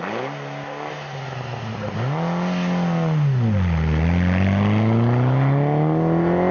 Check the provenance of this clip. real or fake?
real